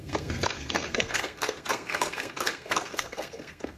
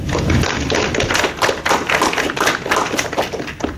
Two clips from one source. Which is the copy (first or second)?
first